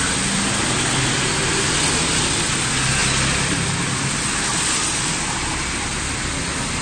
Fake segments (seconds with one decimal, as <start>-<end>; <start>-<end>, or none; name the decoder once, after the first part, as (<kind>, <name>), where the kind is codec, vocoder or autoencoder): none